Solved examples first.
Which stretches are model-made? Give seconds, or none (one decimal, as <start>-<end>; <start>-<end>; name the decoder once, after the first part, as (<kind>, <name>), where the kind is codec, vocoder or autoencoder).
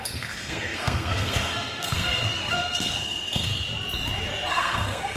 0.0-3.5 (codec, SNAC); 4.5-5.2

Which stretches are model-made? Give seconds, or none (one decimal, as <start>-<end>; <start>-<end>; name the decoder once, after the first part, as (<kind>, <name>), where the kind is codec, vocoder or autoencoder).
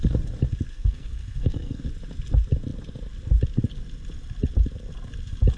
0.7-1.9 (codec, SNAC)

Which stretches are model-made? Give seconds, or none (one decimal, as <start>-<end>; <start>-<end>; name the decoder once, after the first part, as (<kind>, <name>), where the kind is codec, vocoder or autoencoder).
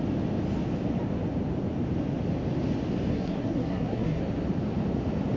3.1-4.2 (codec, SNAC)